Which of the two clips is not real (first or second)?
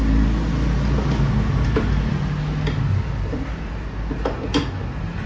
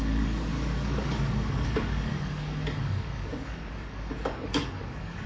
second